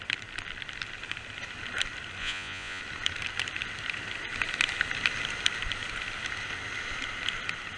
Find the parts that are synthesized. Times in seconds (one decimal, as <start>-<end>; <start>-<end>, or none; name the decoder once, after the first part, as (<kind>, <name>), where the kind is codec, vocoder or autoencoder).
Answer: 2.2-2.8 (vocoder, Vocos)